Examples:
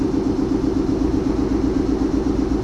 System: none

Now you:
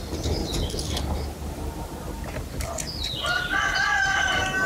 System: none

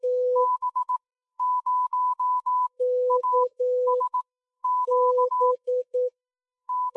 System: codec, SNAC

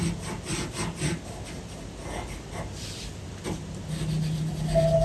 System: none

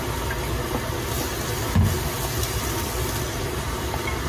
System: none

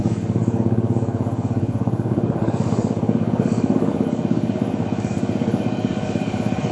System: codec, DAC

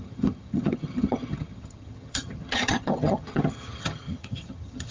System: vocoder, HiFi-GAN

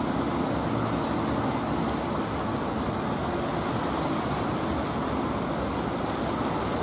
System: none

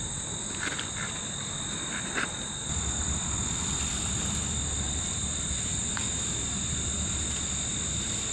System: none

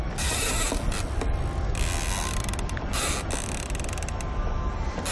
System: none